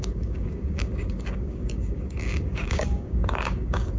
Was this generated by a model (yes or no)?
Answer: yes